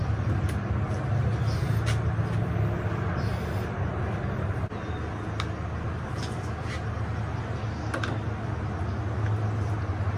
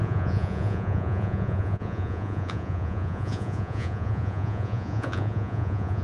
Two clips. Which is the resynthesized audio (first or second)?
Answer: second